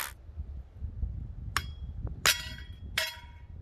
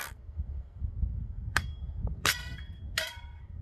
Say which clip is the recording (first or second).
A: first